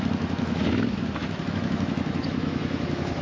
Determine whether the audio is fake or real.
fake